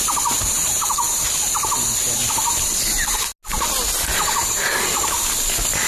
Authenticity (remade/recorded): recorded